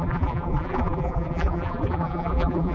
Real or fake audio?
fake